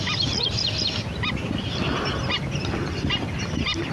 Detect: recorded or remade recorded